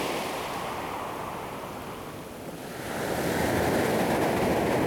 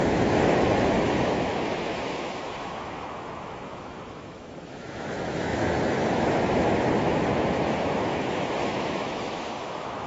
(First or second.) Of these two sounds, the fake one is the second